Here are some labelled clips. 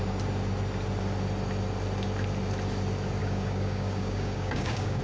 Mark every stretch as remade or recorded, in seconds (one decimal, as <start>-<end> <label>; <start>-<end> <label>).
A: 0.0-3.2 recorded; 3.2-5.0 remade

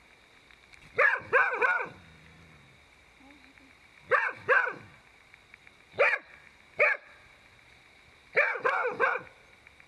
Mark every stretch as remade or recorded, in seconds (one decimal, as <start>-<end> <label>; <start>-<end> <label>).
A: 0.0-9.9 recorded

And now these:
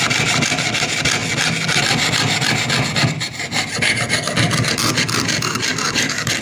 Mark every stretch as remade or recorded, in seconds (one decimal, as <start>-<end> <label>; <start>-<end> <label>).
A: 0.0-5.7 recorded; 5.7-6.4 remade